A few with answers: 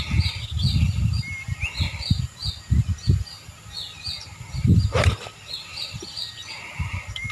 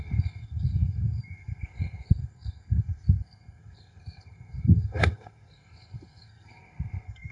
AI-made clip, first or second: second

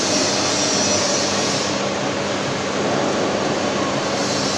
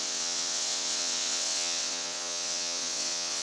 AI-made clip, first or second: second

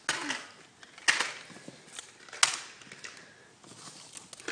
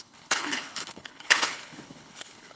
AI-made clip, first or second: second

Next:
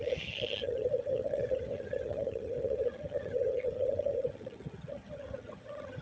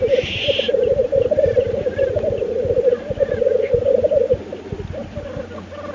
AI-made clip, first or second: first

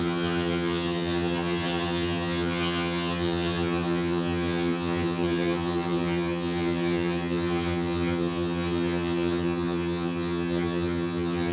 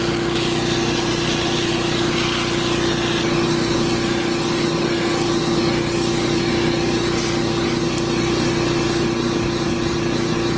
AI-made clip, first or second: first